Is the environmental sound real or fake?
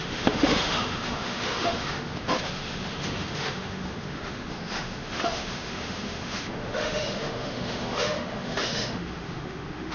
fake